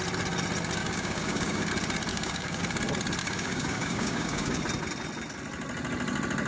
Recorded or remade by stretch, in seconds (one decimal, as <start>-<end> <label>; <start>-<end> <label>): 0.0-0.8 recorded; 0.8-1.7 remade; 1.7-2.1 recorded; 2.1-2.6 remade; 2.6-3.2 recorded; 3.2-4.6 remade; 4.6-6.5 recorded